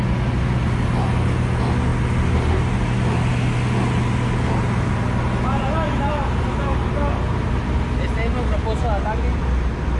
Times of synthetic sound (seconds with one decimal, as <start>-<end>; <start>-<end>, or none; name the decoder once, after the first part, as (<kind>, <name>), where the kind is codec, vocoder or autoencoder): none